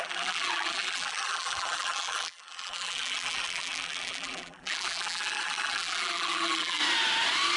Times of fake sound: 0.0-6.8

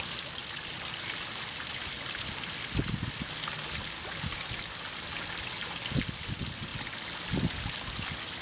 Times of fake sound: none

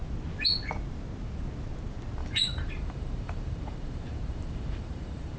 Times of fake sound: 2.2-5.4

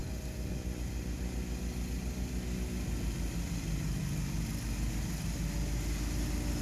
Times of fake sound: none